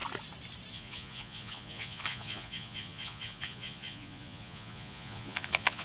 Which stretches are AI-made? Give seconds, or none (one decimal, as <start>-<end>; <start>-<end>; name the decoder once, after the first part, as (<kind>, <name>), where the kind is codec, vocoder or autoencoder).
0.7-5.8 (vocoder, Vocos)